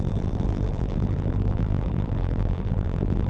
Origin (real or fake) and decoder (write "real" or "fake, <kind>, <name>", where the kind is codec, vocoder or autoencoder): fake, vocoder, BigVGAN v2